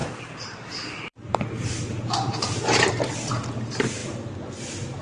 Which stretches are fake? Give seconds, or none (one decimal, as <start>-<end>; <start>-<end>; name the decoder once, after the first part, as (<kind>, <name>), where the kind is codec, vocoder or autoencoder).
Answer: 0.0-3.0 (vocoder, BigVGAN v2)